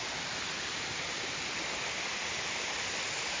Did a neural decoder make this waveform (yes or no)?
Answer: no